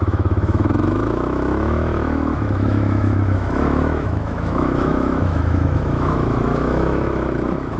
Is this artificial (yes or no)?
yes